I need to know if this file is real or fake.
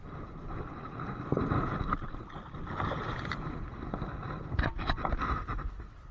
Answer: real